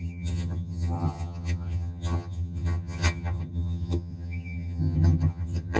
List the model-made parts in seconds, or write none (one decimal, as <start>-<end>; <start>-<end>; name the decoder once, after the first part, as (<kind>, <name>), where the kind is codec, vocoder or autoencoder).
0.0-5.8 (vocoder, HiFi-GAN)